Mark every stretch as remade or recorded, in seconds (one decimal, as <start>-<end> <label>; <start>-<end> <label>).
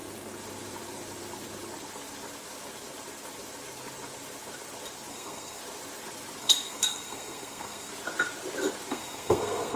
0.0-5.1 recorded; 5.1-5.6 remade; 5.6-6.4 recorded; 6.4-7.9 remade; 7.9-8.9 recorded; 8.9-9.8 remade